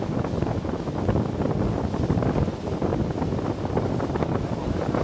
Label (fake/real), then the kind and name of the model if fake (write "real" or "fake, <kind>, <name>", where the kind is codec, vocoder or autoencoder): real